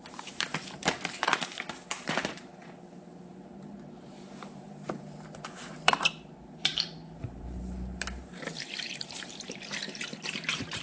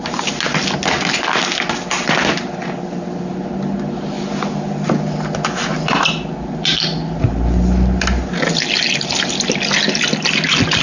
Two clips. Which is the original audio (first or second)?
second